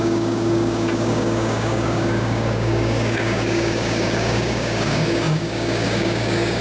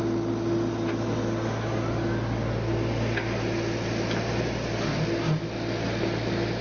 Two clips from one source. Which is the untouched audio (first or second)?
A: second